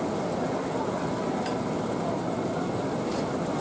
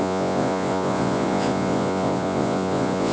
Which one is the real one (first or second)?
first